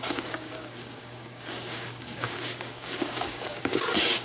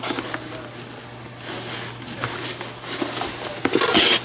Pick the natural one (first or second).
second